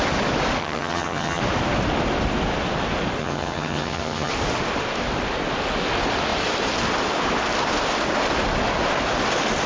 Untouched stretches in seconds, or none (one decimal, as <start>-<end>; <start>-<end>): 0.0-0.6; 1.4-3.2; 4.3-9.7